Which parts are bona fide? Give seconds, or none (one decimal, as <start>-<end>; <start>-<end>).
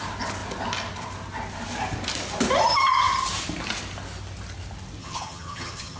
0.0-5.0